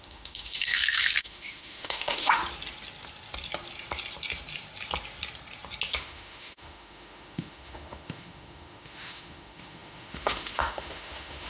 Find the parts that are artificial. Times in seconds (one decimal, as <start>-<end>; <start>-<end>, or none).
0.0-2.4; 5.9-11.5